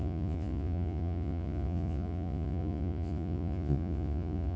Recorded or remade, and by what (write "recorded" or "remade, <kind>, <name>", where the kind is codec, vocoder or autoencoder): remade, vocoder, Vocos